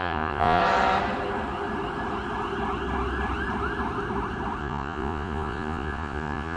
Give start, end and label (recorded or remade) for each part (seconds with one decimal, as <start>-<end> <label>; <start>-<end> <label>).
0.0-0.6 remade; 0.6-4.6 recorded; 4.6-6.6 remade